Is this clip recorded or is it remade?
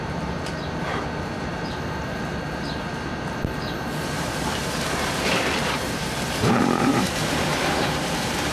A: remade